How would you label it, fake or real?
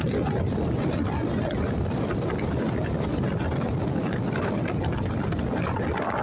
real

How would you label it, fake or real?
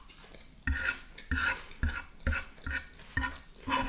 real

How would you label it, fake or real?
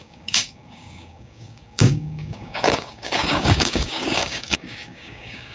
fake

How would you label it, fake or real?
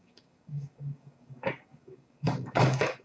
fake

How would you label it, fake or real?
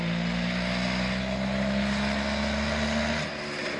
real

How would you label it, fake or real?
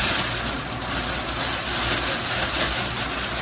real